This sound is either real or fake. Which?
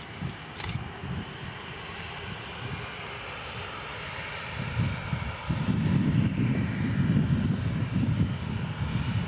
real